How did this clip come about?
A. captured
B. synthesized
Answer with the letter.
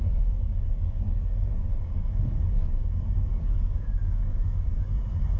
B